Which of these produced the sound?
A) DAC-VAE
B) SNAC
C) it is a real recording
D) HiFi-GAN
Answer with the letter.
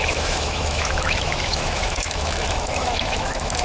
A